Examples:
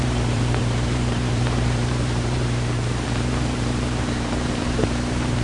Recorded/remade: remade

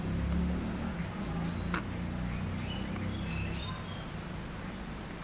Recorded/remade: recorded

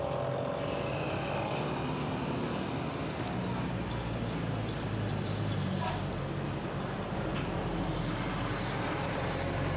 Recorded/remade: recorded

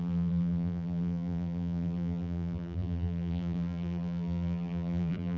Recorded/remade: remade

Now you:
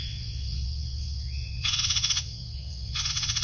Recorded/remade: remade